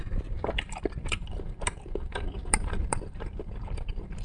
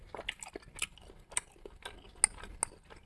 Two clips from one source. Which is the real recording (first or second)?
second